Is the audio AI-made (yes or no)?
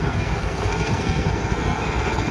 yes